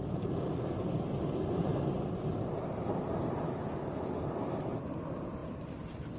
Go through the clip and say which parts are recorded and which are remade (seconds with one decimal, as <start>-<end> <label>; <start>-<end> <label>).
0.0-6.2 recorded